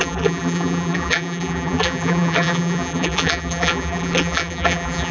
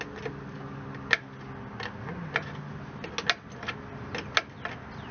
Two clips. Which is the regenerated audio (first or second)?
first